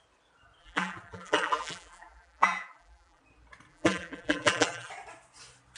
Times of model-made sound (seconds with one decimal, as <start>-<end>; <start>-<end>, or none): 0.6-3.2; 3.7-4.9